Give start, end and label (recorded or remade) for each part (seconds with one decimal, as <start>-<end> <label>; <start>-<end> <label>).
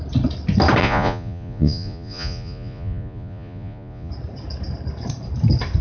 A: 0.0-0.8 recorded; 0.8-4.1 remade; 4.1-5.8 recorded